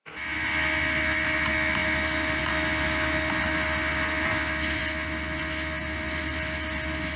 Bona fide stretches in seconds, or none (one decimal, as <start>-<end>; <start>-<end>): 0.0-7.2